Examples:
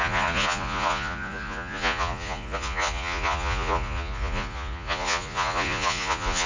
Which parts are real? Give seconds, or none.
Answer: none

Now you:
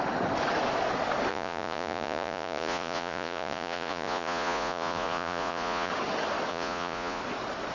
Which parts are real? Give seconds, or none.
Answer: 0.0-1.3; 5.9-6.5; 7.2-7.7

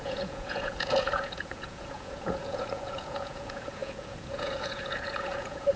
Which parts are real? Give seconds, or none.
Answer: none

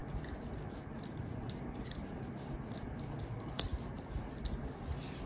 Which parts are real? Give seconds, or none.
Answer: 0.0-5.3

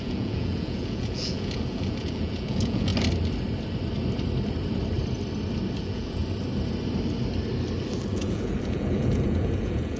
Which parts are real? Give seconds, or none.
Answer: 2.9-5.8; 6.2-8.1

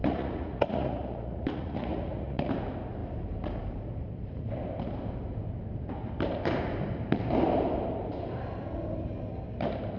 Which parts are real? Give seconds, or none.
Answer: 2.4-10.0

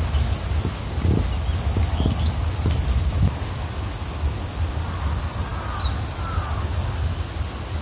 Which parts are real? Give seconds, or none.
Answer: 0.0-7.8

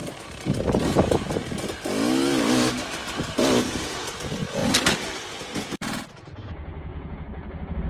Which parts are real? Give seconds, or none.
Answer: 0.0-3.6; 4.6-5.4